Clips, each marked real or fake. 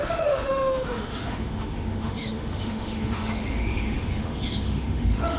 fake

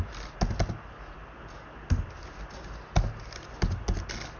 real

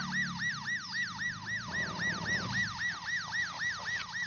real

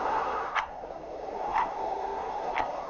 fake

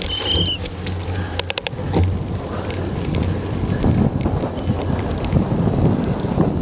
real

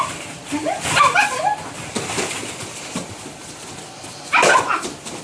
fake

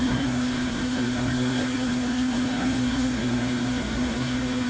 fake